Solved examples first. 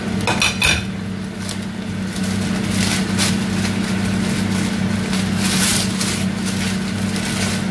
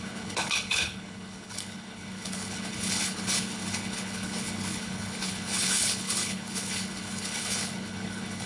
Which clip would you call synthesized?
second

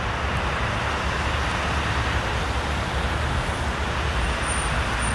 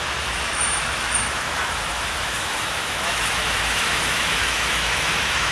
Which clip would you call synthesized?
second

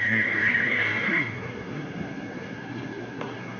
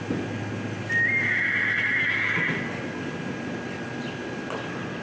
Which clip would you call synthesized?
first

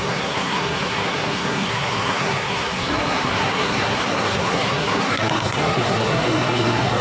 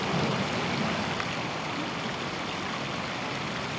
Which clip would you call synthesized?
first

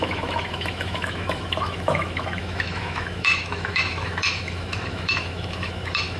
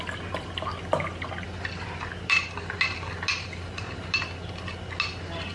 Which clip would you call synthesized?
first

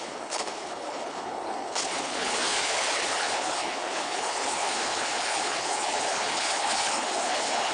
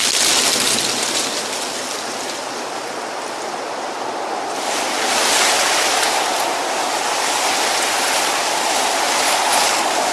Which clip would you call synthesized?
first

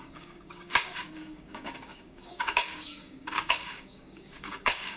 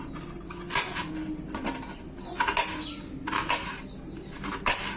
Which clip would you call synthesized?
first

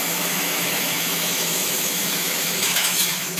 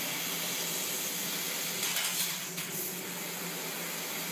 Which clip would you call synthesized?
first